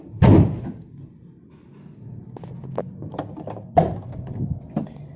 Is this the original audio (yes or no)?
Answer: yes